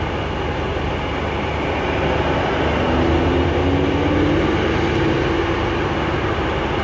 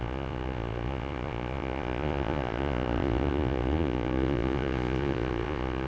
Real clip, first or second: first